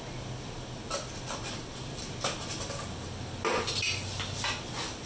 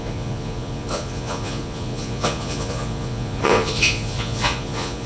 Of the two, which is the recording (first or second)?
first